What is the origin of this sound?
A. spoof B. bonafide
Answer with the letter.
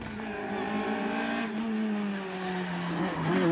B